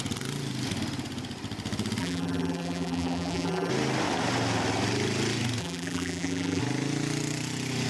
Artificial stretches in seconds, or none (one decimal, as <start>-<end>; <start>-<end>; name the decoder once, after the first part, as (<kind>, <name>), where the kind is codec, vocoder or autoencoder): 2.0-3.7 (vocoder, BigVGAN v2); 5.6-6.6

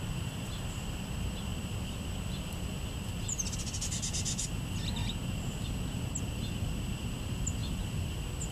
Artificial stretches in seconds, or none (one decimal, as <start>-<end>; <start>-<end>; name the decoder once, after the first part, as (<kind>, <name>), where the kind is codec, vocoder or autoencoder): none

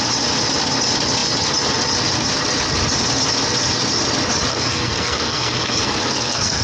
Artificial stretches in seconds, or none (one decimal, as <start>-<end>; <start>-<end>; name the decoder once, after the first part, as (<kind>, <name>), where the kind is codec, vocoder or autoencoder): 4.5-6.6 (codec, SNAC)

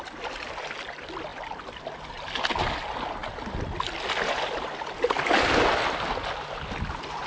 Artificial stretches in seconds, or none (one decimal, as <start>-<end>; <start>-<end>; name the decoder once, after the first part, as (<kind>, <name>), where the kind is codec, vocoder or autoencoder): none

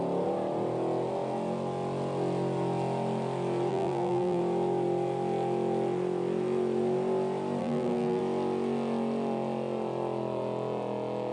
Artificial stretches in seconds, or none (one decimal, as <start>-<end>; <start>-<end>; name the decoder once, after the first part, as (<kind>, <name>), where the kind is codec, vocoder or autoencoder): 3.7-4.4 (vocoder, BigVGAN v2); 7.6-8.2

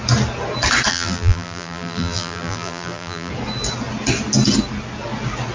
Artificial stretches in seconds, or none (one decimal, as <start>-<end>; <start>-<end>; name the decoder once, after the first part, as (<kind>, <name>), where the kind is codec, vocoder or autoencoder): 0.9-3.3 (vocoder, BigVGAN v2)